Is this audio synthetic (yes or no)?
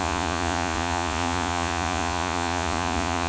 yes